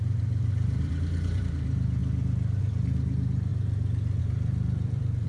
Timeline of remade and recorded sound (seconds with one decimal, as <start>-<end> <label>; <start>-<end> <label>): 0.0-2.0 remade; 2.0-2.6 recorded; 2.6-3.5 remade; 3.5-4.2 recorded; 4.2-5.3 remade

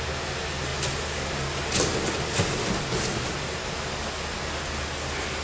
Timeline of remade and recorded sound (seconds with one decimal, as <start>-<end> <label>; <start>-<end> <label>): 0.0-5.4 recorded